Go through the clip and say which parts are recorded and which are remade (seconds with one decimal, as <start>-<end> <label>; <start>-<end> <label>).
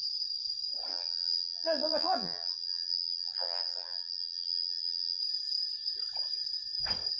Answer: 0.0-0.9 recorded; 0.9-5.2 remade; 5.2-7.2 recorded